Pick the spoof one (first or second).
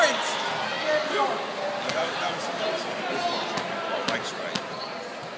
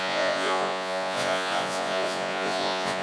second